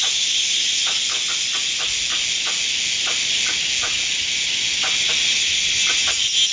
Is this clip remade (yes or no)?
no